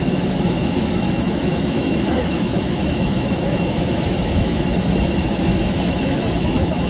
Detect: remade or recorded remade